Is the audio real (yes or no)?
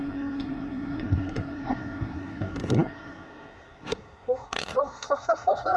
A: no